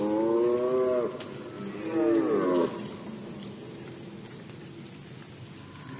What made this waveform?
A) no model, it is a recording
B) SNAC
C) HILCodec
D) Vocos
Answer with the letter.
A